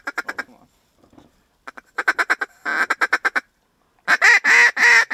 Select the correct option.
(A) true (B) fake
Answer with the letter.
A